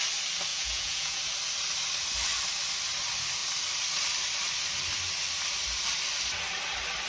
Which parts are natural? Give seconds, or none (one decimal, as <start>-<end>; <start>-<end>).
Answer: 0.0-0.5; 1.2-7.1